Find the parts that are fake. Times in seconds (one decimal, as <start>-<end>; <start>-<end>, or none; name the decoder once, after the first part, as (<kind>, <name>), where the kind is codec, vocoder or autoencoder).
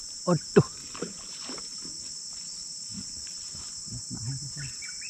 none